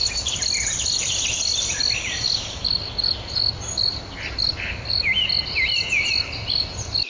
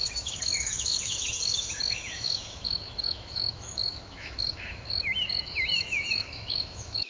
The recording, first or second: first